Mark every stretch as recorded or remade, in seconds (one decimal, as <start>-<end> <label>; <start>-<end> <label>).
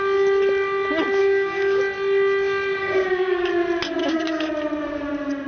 0.0-1.2 recorded; 1.2-1.8 remade; 1.8-2.8 recorded; 2.8-3.5 remade; 3.5-4.0 recorded; 4.0-4.5 remade; 4.5-5.5 recorded